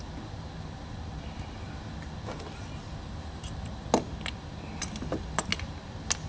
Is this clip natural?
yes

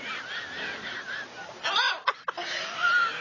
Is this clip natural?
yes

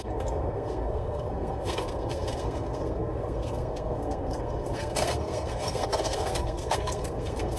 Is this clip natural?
no